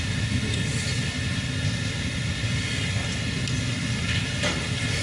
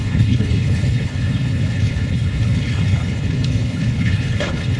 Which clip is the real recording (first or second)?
first